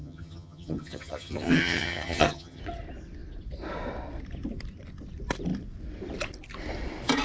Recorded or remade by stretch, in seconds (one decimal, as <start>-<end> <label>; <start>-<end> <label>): 0.0-2.6 remade; 2.6-7.2 recorded

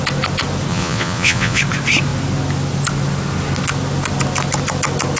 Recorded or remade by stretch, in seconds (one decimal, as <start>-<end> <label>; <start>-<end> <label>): 0.0-0.7 recorded; 0.7-1.6 remade; 1.6-5.2 recorded

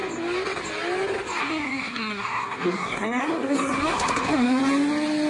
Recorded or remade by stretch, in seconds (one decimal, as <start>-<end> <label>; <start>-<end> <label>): 0.0-1.4 recorded; 1.4-4.6 remade; 4.6-5.3 recorded

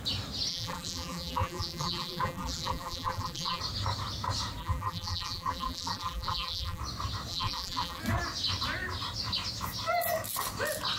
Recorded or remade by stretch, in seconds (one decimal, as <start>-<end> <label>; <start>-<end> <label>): 0.0-0.5 recorded; 0.5-3.6 remade; 3.6-4.6 recorded; 4.6-6.8 remade; 6.8-7.3 recorded; 7.3-8.0 remade; 8.0-11.0 recorded